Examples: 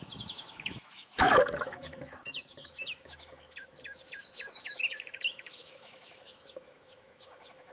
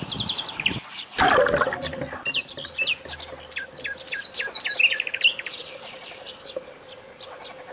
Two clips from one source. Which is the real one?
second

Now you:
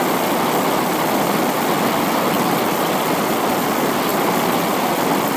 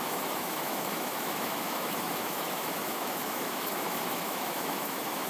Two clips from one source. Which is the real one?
first